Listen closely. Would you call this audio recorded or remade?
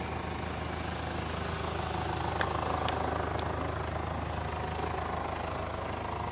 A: recorded